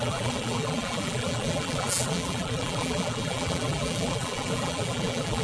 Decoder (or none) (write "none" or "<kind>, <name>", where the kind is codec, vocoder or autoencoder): vocoder, BigVGAN v2